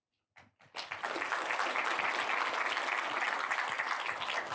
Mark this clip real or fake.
real